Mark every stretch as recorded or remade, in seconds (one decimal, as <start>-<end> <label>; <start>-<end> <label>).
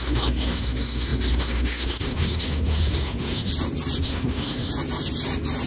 0.0-3.5 remade; 3.5-4.0 recorded; 4.0-4.7 remade; 4.7-5.7 recorded